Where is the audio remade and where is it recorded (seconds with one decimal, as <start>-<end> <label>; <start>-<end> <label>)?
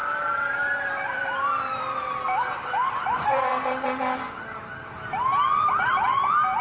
0.0-2.0 remade; 2.0-3.5 recorded; 3.5-4.6 remade; 4.6-6.6 recorded